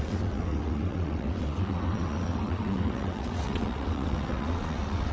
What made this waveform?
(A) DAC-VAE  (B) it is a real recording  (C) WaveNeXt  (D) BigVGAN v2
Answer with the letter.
C